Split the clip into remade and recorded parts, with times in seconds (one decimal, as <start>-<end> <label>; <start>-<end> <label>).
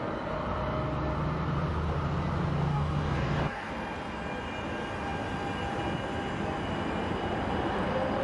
0.0-2.7 recorded; 2.7-3.7 remade; 3.7-8.2 recorded